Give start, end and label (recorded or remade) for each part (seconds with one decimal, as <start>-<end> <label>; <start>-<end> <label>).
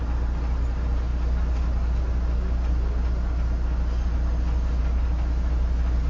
0.0-6.1 recorded